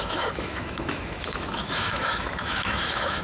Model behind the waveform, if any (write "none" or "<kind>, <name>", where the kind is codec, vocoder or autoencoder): autoencoder, DAC-VAE